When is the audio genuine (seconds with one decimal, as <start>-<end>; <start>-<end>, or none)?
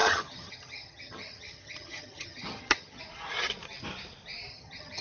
3.0-4.5